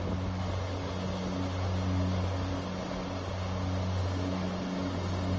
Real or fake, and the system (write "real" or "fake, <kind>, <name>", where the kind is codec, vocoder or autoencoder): real